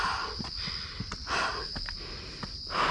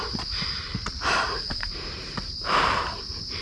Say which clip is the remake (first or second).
second